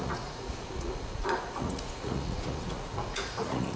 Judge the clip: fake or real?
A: fake